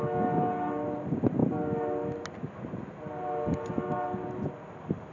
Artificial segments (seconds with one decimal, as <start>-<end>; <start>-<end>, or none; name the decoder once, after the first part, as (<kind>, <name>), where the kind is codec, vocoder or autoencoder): none